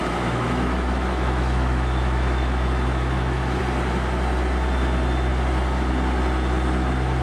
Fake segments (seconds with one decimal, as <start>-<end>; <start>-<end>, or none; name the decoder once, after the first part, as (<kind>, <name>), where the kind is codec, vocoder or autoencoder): 0.0-3.6 (autoencoder, DAC-VAE)